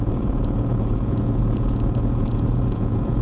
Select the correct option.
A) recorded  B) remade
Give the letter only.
B